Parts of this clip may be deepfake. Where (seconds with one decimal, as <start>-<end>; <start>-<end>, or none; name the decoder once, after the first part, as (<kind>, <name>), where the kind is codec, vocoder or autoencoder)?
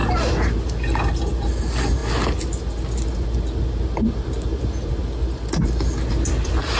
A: none